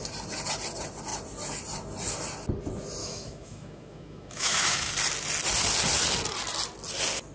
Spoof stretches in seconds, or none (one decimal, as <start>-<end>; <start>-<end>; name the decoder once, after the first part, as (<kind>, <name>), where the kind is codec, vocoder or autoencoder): 3.0-4.9 (autoencoder, DAC-VAE)